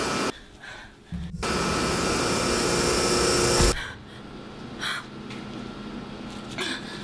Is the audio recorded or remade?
recorded